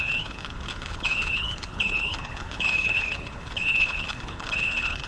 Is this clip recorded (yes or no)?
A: no